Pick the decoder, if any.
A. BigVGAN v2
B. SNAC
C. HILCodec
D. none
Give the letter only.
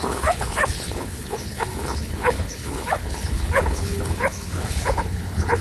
C